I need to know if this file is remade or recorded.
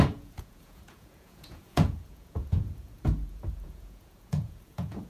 remade